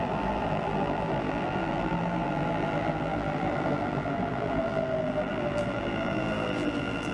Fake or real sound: fake